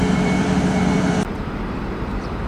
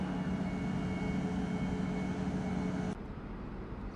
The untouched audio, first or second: second